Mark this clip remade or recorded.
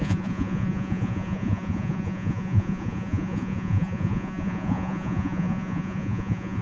remade